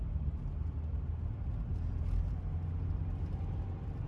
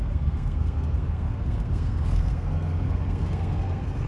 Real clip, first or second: first